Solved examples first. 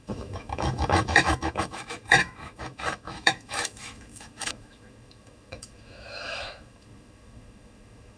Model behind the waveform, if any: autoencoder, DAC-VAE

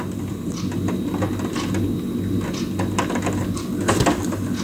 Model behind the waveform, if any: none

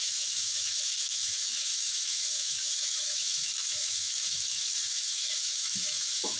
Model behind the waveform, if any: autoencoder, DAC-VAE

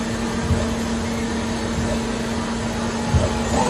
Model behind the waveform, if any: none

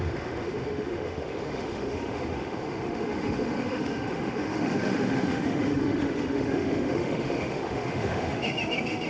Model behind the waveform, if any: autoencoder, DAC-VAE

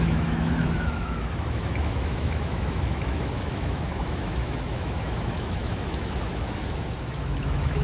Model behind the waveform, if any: autoencoder, DAC-VAE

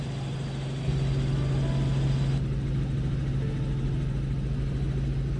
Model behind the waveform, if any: none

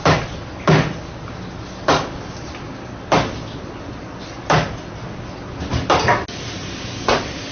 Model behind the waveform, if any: none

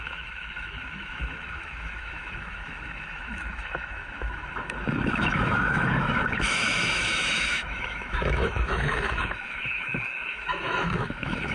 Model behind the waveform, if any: autoencoder, DAC-VAE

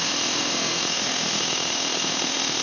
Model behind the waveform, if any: autoencoder, DAC-VAE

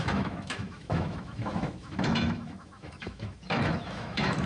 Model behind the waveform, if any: autoencoder, DAC-VAE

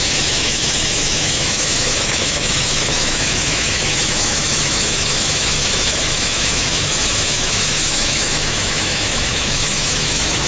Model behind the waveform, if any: autoencoder, DAC-VAE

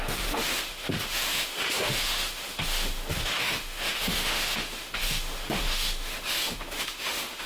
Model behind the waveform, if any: autoencoder, DAC-VAE